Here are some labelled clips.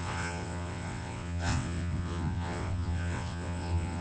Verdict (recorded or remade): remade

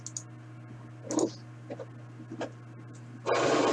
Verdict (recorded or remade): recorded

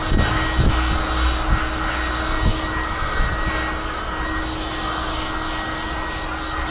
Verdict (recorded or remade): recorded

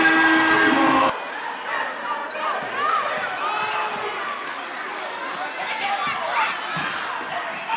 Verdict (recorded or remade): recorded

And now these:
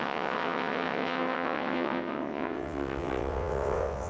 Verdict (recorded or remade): remade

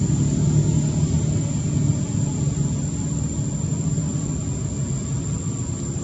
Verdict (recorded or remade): recorded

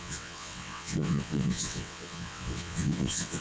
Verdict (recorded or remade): remade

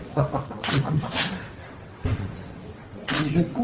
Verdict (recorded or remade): remade